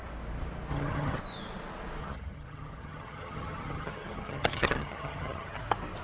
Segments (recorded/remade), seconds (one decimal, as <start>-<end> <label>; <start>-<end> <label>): 0.0-0.7 recorded; 0.7-1.2 remade; 1.2-2.0 recorded; 2.0-5.6 remade; 5.6-6.0 recorded